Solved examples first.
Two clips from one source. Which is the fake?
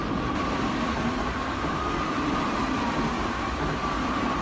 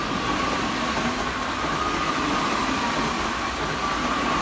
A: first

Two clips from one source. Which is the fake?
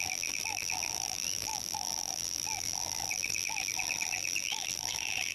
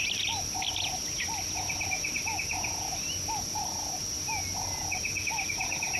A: first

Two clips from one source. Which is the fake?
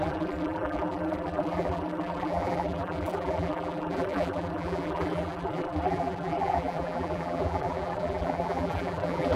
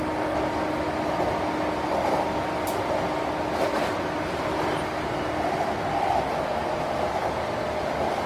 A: first